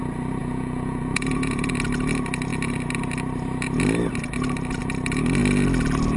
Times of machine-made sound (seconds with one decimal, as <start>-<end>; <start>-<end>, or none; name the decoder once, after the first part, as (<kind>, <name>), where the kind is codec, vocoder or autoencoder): 0.4-1.7 (vocoder, Vocos)